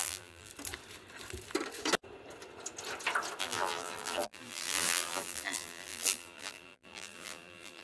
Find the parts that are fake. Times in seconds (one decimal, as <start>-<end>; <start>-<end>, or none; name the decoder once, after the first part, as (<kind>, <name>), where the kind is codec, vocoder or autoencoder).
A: 0.0-0.5 (vocoder, BigVGAN v2); 3.4-7.8